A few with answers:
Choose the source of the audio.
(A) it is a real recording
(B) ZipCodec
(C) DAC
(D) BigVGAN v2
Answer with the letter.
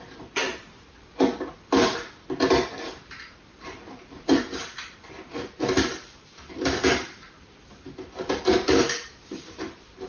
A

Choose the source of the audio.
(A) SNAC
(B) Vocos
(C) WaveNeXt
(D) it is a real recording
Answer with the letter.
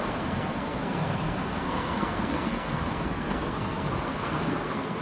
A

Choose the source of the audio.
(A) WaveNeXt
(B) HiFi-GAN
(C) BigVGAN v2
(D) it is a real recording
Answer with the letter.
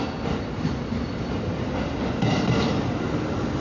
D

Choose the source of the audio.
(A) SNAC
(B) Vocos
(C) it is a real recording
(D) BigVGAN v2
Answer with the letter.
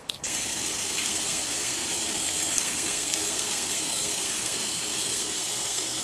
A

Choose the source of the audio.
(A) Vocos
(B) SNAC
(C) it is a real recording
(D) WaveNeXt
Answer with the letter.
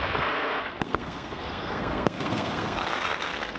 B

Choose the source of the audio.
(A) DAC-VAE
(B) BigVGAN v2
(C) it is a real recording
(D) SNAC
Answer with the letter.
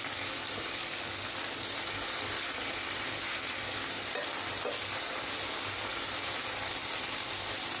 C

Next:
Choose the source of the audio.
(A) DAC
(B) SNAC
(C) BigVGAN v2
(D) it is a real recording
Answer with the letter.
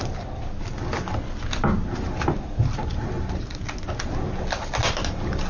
D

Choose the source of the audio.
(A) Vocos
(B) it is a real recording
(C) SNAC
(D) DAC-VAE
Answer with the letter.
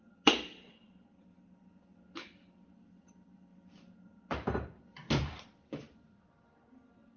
B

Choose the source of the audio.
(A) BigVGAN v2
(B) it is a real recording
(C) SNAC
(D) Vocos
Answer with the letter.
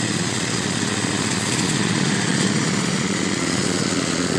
D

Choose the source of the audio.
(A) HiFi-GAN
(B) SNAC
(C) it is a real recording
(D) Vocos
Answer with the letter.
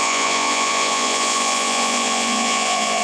D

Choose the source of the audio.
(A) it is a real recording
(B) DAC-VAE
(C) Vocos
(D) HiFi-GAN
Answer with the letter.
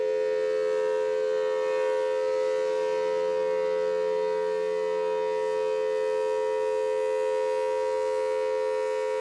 A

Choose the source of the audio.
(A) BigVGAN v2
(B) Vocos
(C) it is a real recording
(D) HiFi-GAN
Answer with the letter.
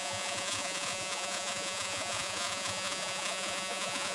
B